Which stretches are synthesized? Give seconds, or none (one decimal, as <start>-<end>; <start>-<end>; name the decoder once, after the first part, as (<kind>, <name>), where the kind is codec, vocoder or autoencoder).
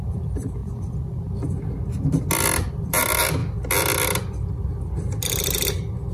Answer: 0.0-0.6 (vocoder, BigVGAN v2); 2.7-3.4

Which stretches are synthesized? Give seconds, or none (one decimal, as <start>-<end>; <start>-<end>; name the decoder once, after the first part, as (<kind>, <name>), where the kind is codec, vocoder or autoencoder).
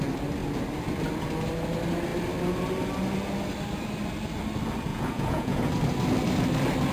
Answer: 4.9-5.7 (vocoder, Vocos)